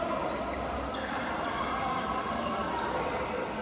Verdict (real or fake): fake